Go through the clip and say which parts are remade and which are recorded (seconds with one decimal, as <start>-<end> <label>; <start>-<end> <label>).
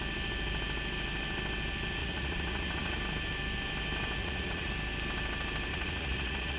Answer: 0.0-2.0 recorded; 2.0-3.0 remade; 3.0-4.2 recorded; 4.2-4.7 remade; 4.7-5.7 recorded; 5.7-6.6 remade